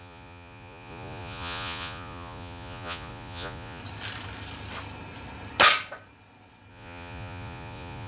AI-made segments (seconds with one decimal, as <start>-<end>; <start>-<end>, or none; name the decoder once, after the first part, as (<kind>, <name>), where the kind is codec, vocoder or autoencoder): 0.0-3.8 (vocoder, Vocos); 6.7-8.1